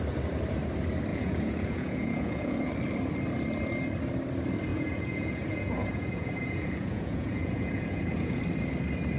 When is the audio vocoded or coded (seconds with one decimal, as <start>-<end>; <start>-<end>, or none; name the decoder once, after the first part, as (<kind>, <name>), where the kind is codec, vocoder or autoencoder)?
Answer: 1.1-2.7 (vocoder, Vocos); 4.7-8.4